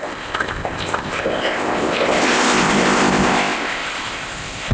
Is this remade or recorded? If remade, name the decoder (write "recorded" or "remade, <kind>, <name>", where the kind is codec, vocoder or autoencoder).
remade, codec, ZipCodec